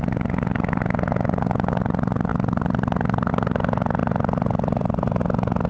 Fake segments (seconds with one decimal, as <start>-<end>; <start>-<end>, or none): 2.3-3.3; 4.0-5.2